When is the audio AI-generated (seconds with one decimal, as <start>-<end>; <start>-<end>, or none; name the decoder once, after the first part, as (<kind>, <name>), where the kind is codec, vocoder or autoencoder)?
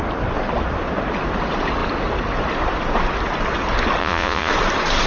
4.0-4.5 (vocoder, Vocos)